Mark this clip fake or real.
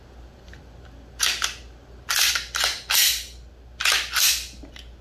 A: real